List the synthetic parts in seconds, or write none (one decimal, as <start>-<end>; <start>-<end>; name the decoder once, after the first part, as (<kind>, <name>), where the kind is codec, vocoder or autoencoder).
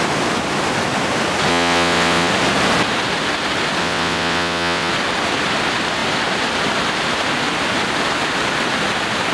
1.5-2.3 (vocoder, WaveNeXt); 3.8-4.9